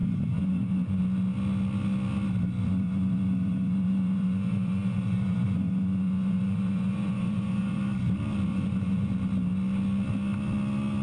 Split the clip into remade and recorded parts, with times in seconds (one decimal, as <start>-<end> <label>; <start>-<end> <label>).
0.0-1.0 remade; 1.0-2.7 recorded; 2.7-7.8 remade; 7.8-8.5 recorded; 8.5-9.1 remade; 9.1-11.0 recorded